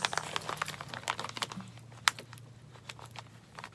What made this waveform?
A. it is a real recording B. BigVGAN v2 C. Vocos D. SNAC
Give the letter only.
A